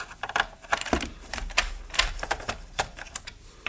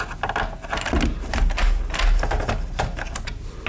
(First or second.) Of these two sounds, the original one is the second